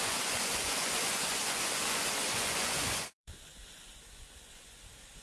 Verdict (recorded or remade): remade